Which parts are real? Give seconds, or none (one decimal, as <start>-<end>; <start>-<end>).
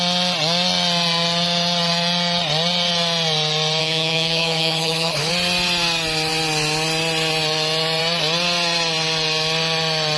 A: 0.0-3.8; 5.3-10.2